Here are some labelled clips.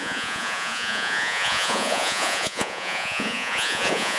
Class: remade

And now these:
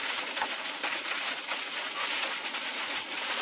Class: remade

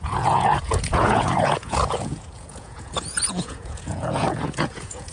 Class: remade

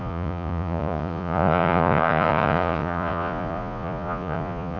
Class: remade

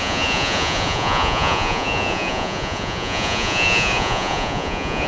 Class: remade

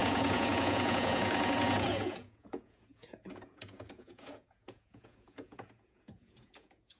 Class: remade